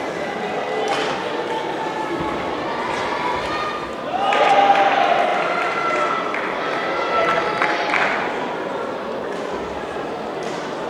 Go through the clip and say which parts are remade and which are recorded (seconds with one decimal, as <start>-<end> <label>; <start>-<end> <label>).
0.0-10.9 recorded